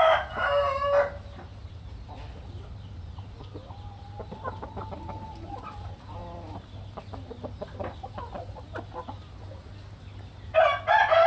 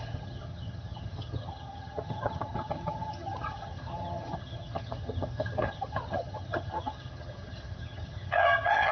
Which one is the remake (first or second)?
second